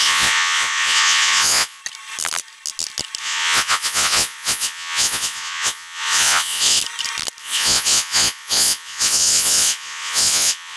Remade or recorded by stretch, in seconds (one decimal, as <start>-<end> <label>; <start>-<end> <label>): 0.0-1.8 remade; 1.8-3.2 recorded; 3.2-6.8 remade; 6.8-7.4 recorded; 7.4-10.8 remade